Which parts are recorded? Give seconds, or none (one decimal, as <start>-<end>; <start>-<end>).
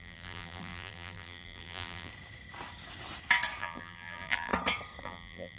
2.1-3.6; 4.5-5.0